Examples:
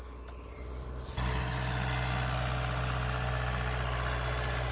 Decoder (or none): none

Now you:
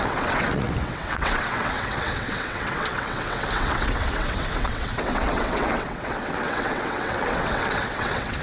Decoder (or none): vocoder, WaveNeXt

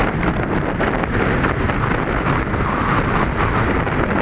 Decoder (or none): none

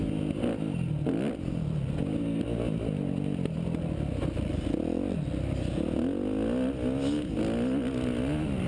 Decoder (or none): none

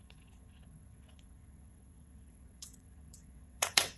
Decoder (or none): vocoder, WaveNeXt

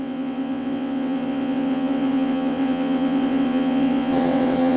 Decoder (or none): vocoder, WaveNeXt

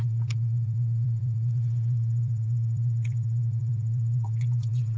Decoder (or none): vocoder, WaveNeXt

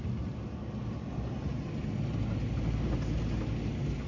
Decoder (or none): none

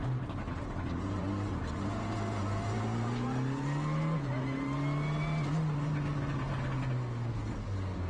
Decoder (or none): none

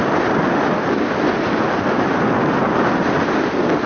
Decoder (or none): none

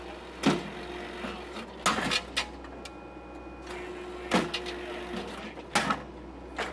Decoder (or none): none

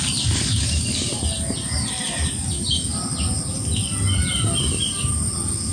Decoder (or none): none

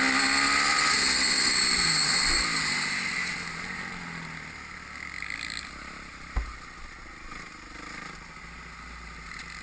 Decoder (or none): none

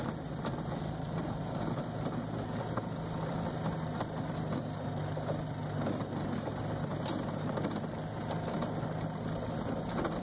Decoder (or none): none